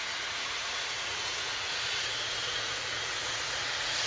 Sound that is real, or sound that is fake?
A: fake